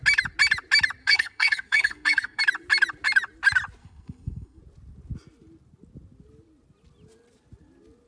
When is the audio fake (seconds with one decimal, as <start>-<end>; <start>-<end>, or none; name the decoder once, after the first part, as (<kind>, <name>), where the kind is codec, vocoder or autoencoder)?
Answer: 1.0-2.4 (codec, SNAC); 3.8-4.6